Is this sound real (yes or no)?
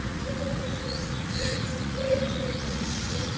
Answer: no